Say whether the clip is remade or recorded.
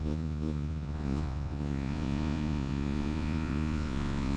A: remade